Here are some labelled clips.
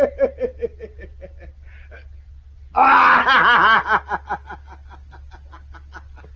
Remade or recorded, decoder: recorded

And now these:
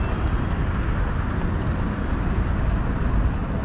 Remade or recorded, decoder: recorded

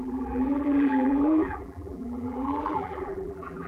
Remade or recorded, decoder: remade, vocoder, BigVGAN v2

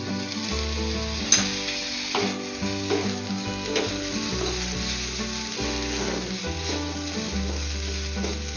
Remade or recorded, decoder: recorded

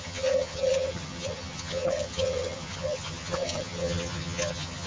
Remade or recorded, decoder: remade, vocoder, HiFi-GAN